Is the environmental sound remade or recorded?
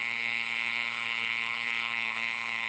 remade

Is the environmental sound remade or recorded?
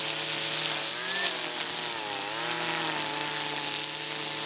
recorded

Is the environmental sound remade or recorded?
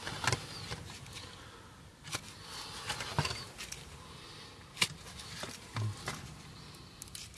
recorded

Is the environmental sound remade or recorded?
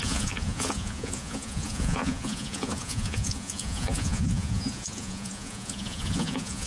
remade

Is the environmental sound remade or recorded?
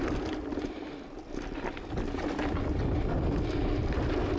recorded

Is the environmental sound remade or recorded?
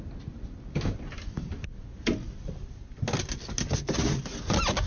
recorded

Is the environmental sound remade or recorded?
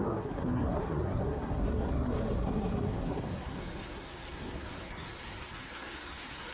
remade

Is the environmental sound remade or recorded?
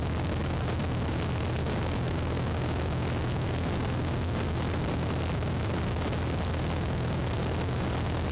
recorded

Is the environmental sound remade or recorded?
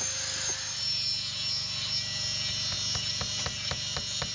recorded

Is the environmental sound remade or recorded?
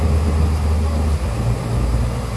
recorded